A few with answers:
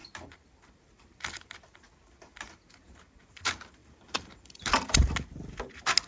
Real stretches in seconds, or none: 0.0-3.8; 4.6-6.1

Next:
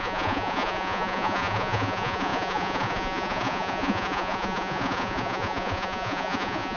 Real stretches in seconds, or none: none

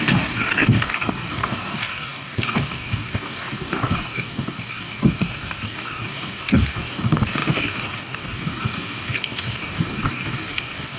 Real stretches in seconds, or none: none

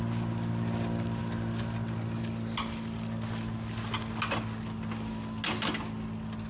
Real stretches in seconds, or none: 0.0-6.5